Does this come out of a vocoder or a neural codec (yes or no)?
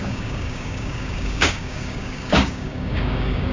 yes